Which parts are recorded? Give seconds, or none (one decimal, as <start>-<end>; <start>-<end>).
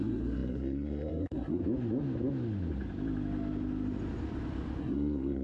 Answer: 1.6-4.8